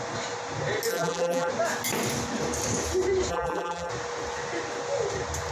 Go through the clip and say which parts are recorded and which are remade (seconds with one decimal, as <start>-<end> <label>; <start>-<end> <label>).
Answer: 0.0-0.9 recorded; 0.9-1.5 remade; 1.5-3.3 recorded; 3.3-3.9 remade; 3.9-5.5 recorded